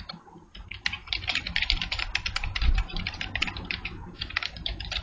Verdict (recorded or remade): remade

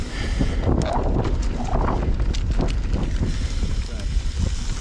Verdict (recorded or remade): recorded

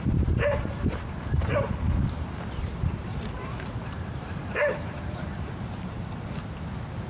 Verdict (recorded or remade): remade